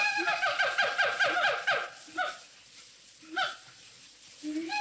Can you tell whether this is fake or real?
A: real